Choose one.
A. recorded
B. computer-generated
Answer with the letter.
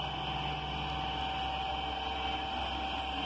A